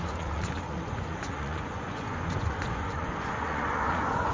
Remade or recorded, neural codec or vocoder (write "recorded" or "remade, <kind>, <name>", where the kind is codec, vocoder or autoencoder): remade, vocoder, Vocos